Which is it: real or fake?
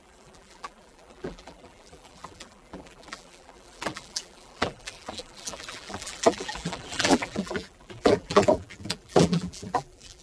fake